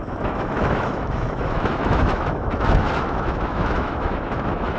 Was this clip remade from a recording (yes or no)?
yes